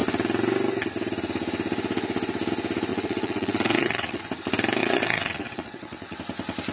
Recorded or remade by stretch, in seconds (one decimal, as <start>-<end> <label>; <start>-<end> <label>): 0.0-2.9 recorded; 2.9-4.2 remade; 4.2-4.8 recorded; 4.8-6.2 remade; 6.2-6.7 recorded